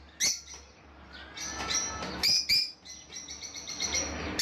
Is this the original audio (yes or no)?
yes